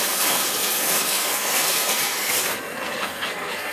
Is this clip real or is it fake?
fake